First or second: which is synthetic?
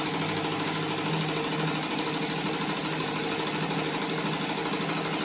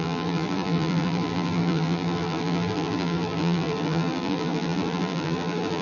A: second